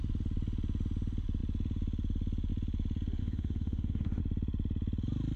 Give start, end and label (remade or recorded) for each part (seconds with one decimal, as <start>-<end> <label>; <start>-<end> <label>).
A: 0.0-3.2 recorded; 3.2-4.2 remade; 4.2-5.4 recorded